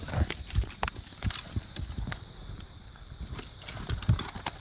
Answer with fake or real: fake